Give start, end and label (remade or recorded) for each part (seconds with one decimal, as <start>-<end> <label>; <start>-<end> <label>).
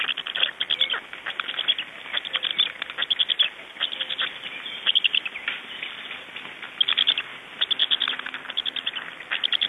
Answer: 0.0-9.7 recorded